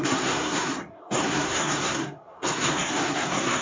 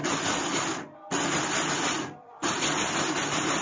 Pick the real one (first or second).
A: second